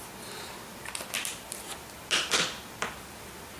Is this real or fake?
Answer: real